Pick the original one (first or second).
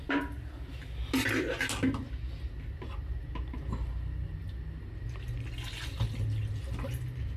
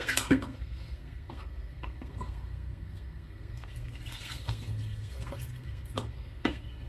first